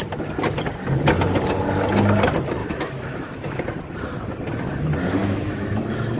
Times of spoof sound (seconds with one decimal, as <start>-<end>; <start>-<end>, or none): 2.6-3.6; 5.2-5.8

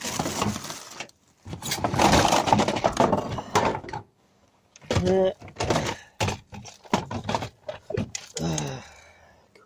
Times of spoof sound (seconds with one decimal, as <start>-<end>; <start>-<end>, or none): 3.7-4.8

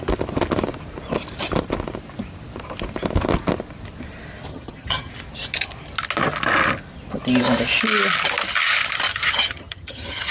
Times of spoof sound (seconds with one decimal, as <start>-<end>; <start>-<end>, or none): 4.5-5.1; 9.1-10.3